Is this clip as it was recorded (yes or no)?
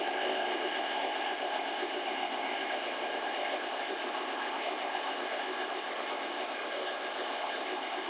no